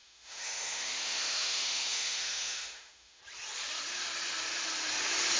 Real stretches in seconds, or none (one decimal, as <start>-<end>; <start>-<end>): 3.2-5.4